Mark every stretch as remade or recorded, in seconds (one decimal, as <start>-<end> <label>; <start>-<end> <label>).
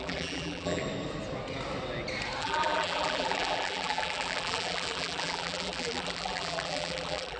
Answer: 0.0-0.8 remade; 0.8-2.4 recorded; 2.4-7.4 remade